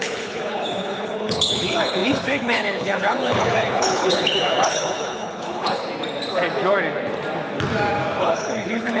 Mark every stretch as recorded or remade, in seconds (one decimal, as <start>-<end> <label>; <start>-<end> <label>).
0.0-5.9 remade; 5.9-8.2 recorded; 8.2-9.0 remade